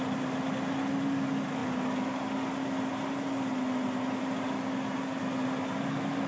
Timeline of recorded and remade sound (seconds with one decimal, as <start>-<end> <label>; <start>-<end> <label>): 0.0-6.3 recorded